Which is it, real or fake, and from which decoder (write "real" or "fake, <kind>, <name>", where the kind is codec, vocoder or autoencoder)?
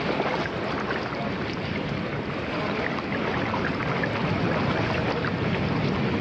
real